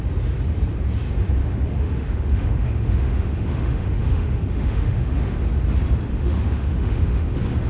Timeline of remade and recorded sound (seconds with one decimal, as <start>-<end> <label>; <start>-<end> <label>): 0.0-1.4 recorded; 1.4-5.4 remade; 5.4-6.1 recorded; 6.1-7.3 remade; 7.3-7.7 recorded